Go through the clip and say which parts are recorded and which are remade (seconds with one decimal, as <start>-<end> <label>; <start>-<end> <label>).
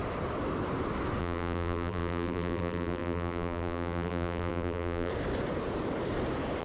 0.0-1.2 recorded; 1.2-5.1 remade; 5.1-6.6 recorded